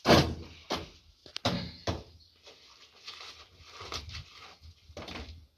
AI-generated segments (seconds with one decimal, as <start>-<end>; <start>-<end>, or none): none